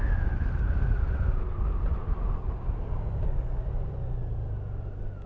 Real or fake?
real